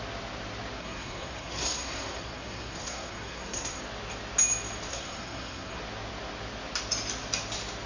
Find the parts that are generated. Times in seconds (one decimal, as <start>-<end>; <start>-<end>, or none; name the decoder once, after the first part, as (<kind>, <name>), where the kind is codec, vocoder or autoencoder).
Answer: 0.8-3.8 (codec, SNAC); 4.9-5.8